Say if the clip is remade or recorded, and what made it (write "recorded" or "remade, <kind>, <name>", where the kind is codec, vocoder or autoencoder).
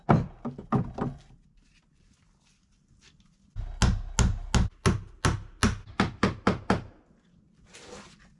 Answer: recorded